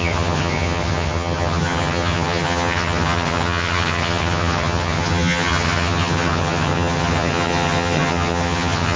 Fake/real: fake